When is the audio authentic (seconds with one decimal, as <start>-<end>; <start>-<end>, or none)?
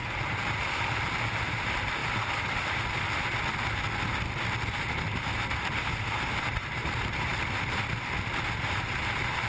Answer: 2.0-4.8; 7.3-8.3